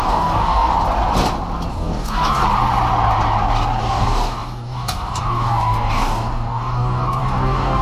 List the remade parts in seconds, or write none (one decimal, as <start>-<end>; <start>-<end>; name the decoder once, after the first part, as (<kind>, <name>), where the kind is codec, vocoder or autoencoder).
0.0-0.7 (codec, DAC); 1.7-2.4; 3.8-7.8